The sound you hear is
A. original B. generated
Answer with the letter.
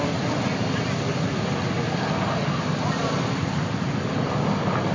A